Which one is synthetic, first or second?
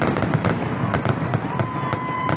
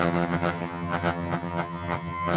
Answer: second